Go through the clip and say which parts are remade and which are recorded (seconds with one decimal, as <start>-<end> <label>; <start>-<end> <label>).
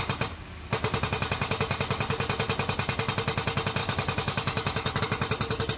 0.0-3.8 recorded; 3.8-5.0 remade; 5.0-5.8 recorded